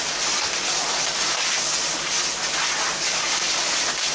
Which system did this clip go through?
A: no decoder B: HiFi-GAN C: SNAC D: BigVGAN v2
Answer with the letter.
A